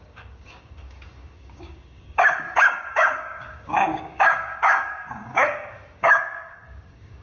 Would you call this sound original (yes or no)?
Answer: no